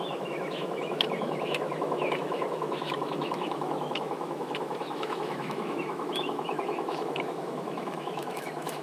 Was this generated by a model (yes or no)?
yes